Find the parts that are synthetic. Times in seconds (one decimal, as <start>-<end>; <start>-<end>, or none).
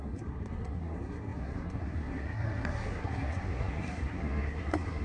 0.0-5.0